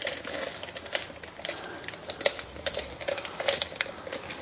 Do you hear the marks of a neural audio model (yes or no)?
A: no